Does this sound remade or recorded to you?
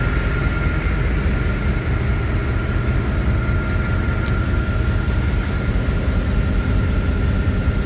recorded